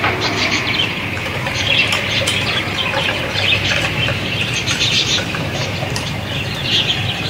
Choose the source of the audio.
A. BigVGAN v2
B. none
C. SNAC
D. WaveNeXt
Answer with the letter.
A